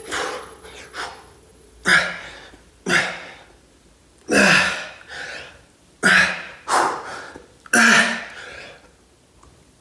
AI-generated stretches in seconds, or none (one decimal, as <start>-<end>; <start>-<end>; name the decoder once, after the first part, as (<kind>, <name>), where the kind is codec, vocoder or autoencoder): 1.9-4.0 (vocoder, BigVGAN v2); 5.1-6.1